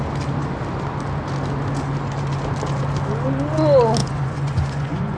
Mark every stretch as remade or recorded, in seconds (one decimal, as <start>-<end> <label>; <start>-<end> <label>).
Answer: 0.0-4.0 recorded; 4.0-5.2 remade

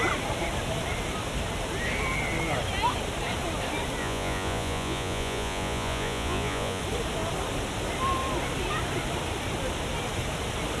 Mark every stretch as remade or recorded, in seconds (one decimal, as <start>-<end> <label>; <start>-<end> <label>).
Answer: 0.0-4.0 recorded; 4.0-6.8 remade; 6.8-10.8 recorded

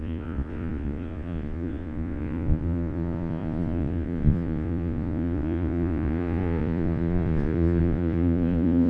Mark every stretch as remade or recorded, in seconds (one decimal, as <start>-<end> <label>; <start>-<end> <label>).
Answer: 0.0-8.9 remade

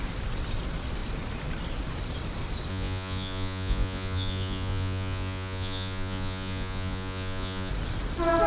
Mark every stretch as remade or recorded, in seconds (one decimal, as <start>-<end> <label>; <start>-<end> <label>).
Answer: 0.0-2.7 recorded; 2.7-7.7 remade; 7.7-8.5 recorded

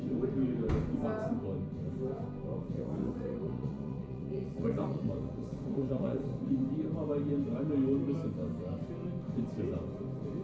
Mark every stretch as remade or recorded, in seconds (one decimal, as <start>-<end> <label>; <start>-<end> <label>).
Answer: 0.0-2.5 recorded; 2.5-6.6 remade; 6.6-10.4 recorded